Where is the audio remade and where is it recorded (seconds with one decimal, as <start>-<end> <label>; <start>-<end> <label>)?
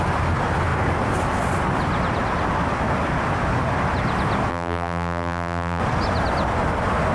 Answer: 0.0-4.5 recorded; 4.5-5.8 remade; 5.8-7.1 recorded